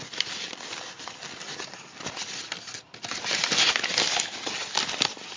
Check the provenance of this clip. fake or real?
real